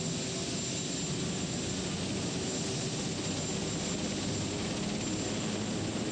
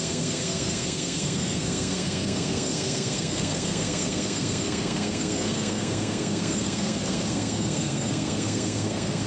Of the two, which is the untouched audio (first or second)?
first